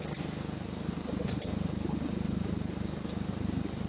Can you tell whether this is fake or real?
real